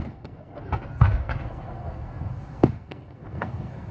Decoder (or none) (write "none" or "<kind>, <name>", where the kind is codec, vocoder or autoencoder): codec, SNAC